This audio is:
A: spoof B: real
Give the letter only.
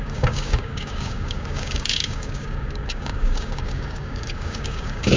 A